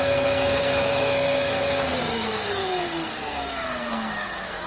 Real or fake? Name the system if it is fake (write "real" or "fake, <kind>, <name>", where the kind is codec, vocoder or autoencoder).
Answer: fake, codec, SNAC